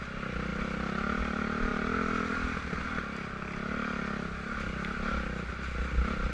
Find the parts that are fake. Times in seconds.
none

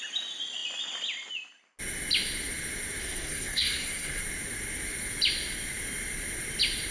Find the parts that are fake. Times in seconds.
3.0-4.2 (codec, SNAC)

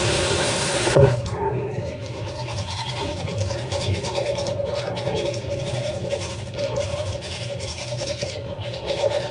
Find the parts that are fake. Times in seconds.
0.0-9.3 (codec, SNAC)

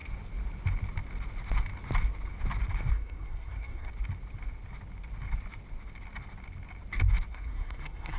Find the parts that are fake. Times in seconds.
2.9-3.9 (codec, SNAC); 7.3-8.2

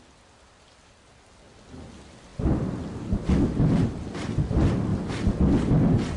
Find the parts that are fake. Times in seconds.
none

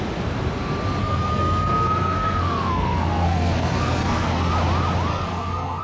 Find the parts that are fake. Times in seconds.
1.0-4.5 (codec, SNAC); 5.1-5.8

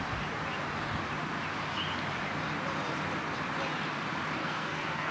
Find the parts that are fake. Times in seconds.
4.4-5.1 (codec, SNAC)